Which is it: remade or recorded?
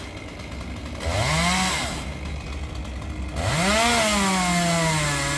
recorded